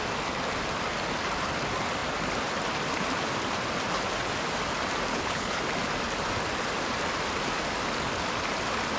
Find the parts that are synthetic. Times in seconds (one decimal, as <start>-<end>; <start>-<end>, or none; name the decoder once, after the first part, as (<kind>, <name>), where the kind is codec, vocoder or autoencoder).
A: 5.1-5.6 (codec, HILCodec)